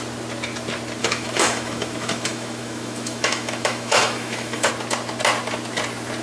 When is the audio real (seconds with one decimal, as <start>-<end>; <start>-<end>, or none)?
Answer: 0.0-1.0; 4.7-6.2